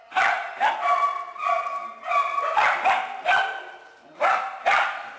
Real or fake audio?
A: real